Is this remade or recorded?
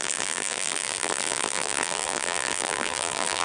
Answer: remade